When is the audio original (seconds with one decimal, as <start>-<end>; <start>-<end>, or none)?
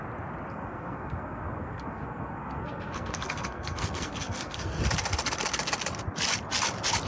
0.0-0.5; 4.8-7.1